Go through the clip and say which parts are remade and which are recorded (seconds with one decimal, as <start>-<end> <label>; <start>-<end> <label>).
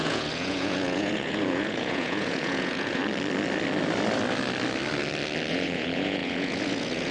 0.0-3.0 remade; 3.0-5.5 recorded; 5.5-7.1 remade